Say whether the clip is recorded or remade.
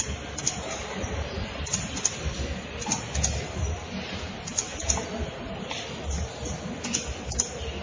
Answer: recorded